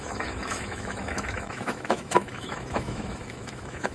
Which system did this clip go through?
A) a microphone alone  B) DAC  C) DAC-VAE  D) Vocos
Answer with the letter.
C